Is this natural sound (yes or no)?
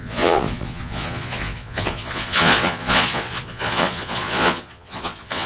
no